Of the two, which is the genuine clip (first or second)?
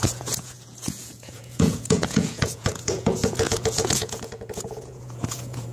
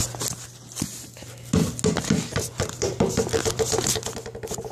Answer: second